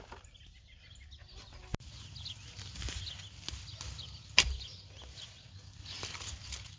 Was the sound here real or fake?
real